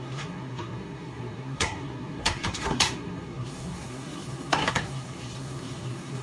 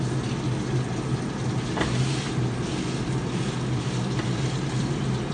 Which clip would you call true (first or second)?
second